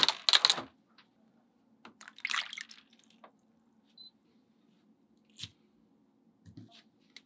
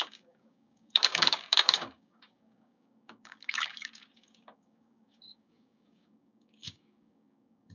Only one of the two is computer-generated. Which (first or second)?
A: second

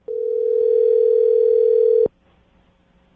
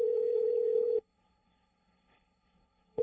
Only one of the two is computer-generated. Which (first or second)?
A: second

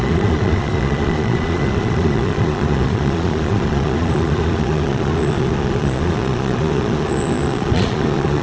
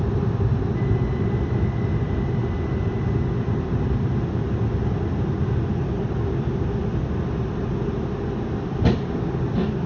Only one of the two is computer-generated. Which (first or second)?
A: first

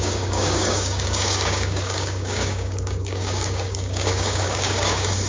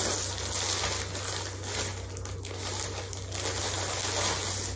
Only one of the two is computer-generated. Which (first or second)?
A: first